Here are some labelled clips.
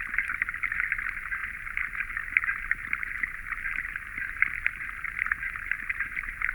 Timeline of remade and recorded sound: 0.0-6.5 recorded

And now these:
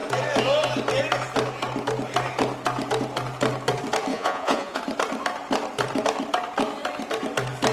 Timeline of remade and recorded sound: 0.0-4.1 recorded; 4.1-4.8 remade; 4.8-7.7 recorded

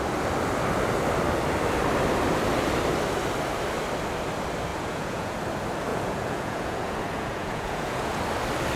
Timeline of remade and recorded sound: 0.0-4.7 recorded; 4.7-5.4 remade; 5.4-5.9 recorded; 5.9-8.2 remade; 8.2-8.8 recorded

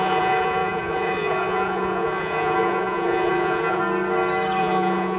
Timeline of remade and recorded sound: 0.0-3.8 remade; 3.8-4.6 recorded; 4.6-5.2 remade